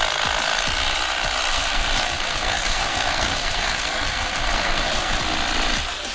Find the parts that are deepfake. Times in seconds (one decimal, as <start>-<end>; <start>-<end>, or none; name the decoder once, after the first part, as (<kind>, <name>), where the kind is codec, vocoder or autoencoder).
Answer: 1.5-5.2 (codec, SNAC)